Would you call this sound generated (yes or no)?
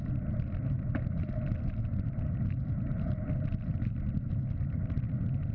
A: no